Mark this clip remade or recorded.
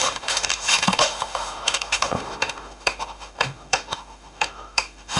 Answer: remade